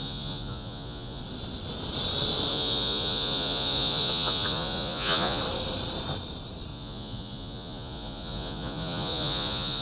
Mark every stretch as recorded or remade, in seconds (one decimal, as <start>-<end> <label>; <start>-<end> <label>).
0.0-1.2 remade; 1.2-2.5 recorded; 2.5-5.4 remade; 5.4-6.7 recorded; 6.7-9.8 remade